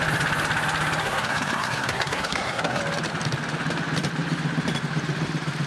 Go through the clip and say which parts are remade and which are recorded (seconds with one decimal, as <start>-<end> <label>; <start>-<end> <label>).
0.0-1.0 recorded; 1.0-2.8 remade; 2.8-5.7 recorded